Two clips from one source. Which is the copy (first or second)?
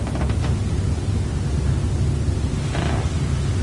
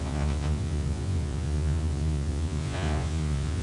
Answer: second